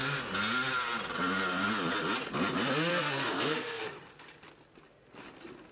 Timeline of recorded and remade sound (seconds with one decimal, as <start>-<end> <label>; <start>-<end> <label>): 0.0-2.9 recorded; 2.9-3.8 remade; 3.8-5.7 recorded

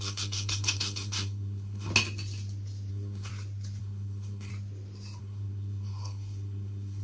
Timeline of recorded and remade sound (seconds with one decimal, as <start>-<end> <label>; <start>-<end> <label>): 0.0-1.9 remade; 1.9-2.9 recorded; 2.9-3.3 remade; 3.3-3.8 recorded; 3.8-4.5 remade; 4.5-5.2 recorded; 5.2-7.0 remade

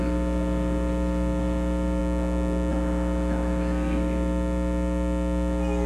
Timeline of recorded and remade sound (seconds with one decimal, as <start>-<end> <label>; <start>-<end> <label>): 0.0-5.9 recorded

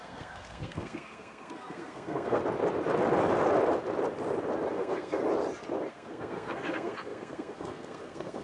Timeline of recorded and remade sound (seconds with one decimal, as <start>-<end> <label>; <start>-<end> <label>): 0.0-2.4 remade; 2.4-4.7 recorded; 4.7-5.2 remade; 5.2-5.9 recorded; 5.9-8.4 remade

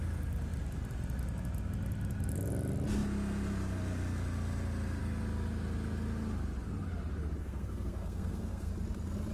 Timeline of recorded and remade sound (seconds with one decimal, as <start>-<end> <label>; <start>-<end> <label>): 0.0-7.4 recorded; 7.4-8.7 remade; 8.7-9.3 recorded

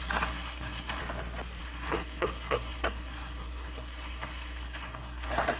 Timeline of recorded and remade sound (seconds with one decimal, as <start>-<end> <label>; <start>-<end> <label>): 0.0-1.0 remade; 1.0-1.6 recorded; 1.6-5.6 remade

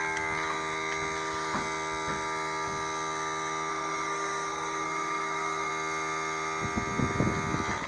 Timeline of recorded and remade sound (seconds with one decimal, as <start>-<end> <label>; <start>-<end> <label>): 0.0-3.7 recorded; 3.7-5.7 remade; 5.7-7.9 recorded

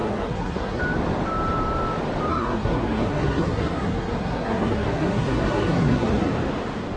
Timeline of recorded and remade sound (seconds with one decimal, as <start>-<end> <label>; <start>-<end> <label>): 0.0-0.8 remade; 0.8-2.3 recorded; 2.3-6.3 remade; 6.3-7.0 recorded